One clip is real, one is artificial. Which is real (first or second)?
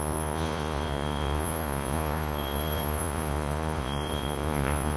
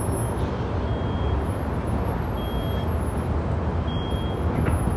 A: second